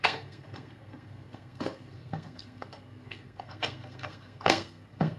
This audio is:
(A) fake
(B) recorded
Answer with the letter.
A